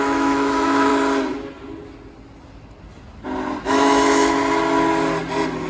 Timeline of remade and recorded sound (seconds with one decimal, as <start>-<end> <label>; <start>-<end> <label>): 0.0-0.9 remade; 0.9-3.6 recorded; 3.6-4.4 remade; 4.4-5.7 recorded